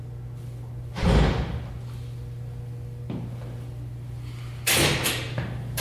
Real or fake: real